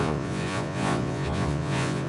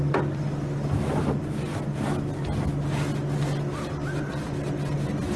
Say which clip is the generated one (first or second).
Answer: first